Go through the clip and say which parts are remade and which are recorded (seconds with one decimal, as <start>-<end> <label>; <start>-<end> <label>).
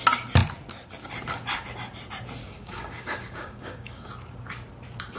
0.0-2.4 recorded; 2.4-4.1 remade; 4.1-5.2 recorded